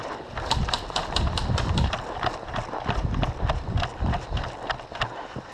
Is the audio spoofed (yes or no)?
no